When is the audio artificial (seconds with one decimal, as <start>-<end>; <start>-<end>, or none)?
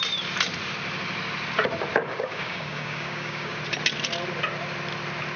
2.0-3.6